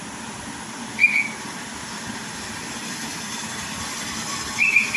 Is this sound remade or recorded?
recorded